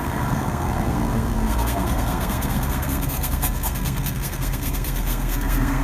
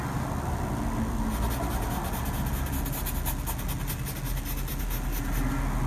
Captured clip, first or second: second